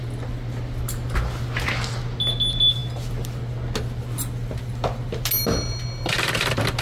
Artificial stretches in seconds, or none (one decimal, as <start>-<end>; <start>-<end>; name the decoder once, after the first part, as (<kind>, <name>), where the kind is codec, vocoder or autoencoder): none